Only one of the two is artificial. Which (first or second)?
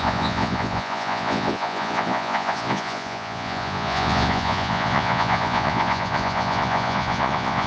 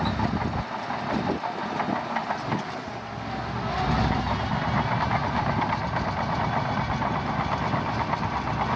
first